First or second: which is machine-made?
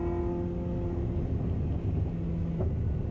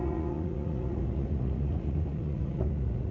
second